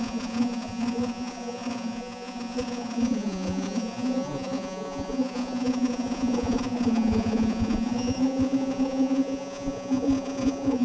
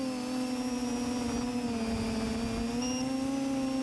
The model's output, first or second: first